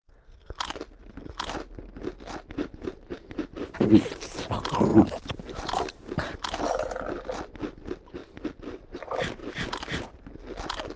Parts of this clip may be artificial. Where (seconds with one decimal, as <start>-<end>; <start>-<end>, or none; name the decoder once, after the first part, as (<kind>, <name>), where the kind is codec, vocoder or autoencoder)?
2.6-3.8 (vocoder, BigVGAN v2); 4.9-5.8; 9.4-10.2